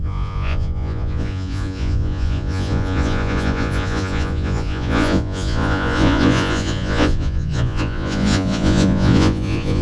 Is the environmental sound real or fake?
fake